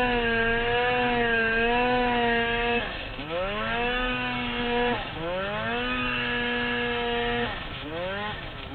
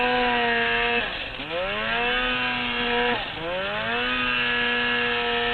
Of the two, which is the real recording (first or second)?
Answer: second